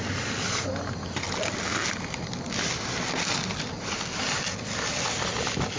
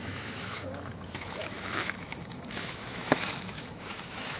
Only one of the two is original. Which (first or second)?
first